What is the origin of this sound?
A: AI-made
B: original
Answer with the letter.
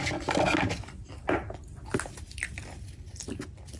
B